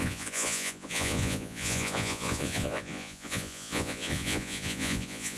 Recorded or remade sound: remade